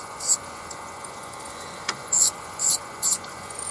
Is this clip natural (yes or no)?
no